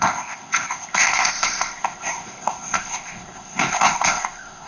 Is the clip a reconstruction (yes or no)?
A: yes